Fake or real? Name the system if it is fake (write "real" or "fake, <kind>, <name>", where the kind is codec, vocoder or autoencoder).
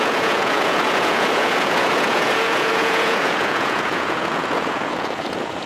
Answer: fake, vocoder, Vocos